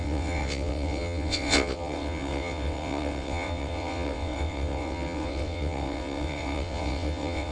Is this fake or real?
fake